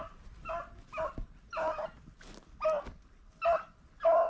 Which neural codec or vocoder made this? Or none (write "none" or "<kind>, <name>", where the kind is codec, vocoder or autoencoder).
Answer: none